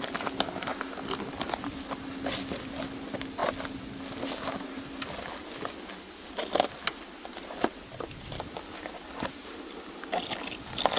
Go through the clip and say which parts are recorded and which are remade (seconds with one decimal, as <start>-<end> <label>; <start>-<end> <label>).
0.0-11.0 recorded